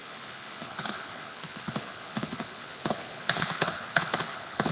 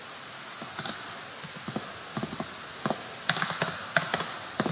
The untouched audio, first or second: second